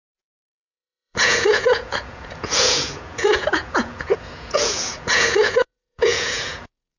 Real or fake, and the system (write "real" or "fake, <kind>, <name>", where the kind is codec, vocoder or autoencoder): fake, vocoder, Vocos